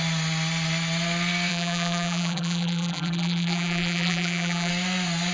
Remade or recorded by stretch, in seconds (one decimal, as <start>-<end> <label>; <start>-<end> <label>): 0.0-1.5 recorded; 1.5-4.7 remade; 4.7-5.3 recorded